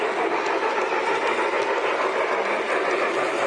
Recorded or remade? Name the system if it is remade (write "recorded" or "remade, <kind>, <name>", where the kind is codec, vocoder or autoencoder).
recorded